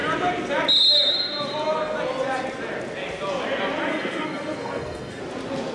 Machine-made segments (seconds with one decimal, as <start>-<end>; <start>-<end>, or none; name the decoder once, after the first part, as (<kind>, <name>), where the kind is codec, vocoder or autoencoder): 3.9-5.2 (codec, SNAC)